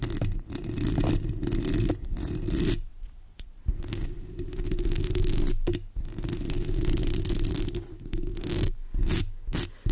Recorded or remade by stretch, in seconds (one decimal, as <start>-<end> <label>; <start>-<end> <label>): 0.0-9.9 recorded